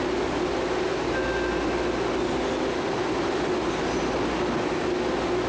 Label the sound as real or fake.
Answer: real